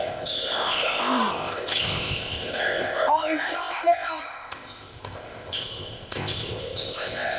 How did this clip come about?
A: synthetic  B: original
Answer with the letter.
A